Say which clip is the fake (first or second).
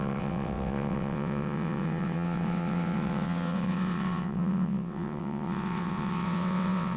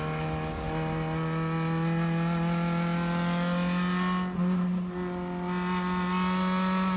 first